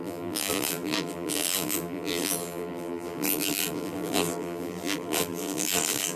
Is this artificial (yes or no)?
yes